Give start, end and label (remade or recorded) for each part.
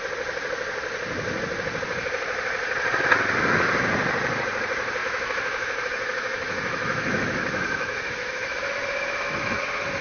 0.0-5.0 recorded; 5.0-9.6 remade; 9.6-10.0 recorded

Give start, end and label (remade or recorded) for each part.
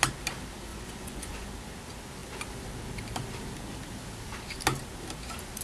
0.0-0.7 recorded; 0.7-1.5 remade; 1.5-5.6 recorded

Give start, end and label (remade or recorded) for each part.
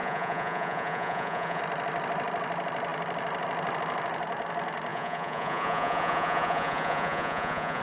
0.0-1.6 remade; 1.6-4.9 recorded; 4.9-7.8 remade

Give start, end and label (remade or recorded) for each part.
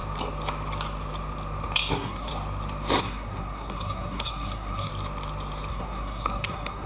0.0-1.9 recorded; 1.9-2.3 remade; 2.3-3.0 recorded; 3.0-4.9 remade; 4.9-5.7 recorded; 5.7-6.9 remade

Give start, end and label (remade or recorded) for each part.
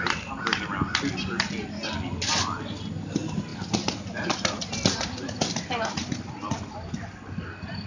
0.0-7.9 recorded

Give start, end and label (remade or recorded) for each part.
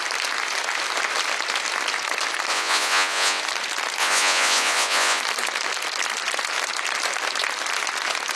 0.0-2.5 recorded; 2.5-3.4 remade; 3.4-4.0 recorded; 4.0-5.2 remade; 5.2-8.4 recorded